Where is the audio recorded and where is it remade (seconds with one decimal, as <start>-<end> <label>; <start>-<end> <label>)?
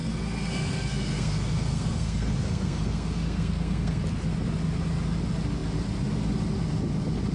0.0-4.0 remade; 4.0-7.3 recorded